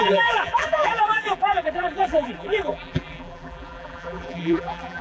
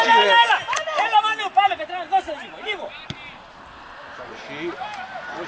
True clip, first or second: second